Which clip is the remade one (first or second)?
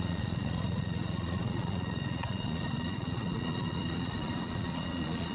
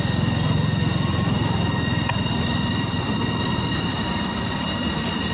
first